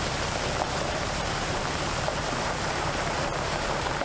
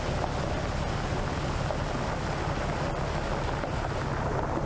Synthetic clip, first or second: first